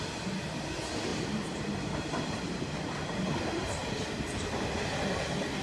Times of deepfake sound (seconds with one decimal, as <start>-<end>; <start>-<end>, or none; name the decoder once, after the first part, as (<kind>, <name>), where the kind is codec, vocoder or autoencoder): 1.1-3.2 (vocoder, BigVGAN v2)